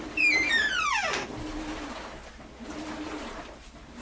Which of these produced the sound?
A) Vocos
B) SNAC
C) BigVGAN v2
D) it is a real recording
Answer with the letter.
D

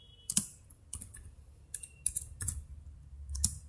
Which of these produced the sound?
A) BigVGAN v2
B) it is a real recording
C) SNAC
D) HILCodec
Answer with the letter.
B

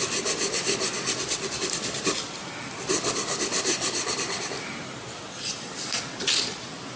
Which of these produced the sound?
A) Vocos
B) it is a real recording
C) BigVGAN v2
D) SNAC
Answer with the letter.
C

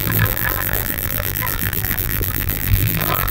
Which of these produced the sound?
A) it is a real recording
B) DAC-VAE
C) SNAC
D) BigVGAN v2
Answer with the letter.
D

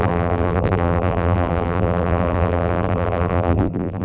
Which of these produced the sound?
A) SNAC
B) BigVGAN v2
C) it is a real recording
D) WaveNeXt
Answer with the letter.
B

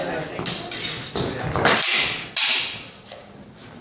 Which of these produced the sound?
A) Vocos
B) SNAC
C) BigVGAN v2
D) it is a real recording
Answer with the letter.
D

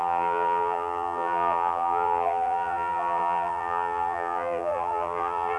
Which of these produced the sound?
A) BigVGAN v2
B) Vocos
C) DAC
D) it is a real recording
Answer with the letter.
A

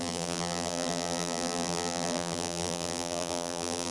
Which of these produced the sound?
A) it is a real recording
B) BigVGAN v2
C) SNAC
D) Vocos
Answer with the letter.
B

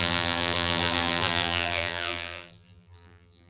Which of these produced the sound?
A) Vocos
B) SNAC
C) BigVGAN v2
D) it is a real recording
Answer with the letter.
C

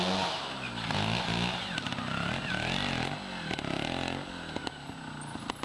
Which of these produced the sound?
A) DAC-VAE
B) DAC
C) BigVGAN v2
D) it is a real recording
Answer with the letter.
D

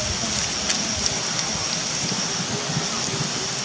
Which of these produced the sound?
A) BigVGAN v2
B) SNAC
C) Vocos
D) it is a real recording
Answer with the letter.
D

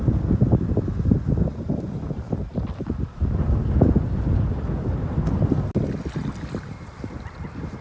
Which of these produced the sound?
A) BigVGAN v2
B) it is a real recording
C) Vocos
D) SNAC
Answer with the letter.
B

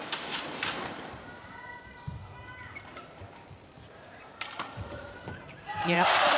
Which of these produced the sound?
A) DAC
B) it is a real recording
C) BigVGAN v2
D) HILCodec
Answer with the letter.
C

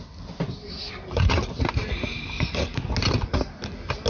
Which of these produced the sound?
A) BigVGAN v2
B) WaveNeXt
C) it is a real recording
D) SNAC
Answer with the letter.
C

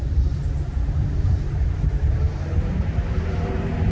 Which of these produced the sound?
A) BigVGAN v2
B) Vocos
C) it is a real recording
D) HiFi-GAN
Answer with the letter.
A